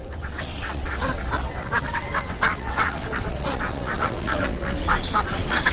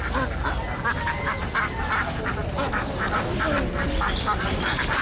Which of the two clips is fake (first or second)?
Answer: first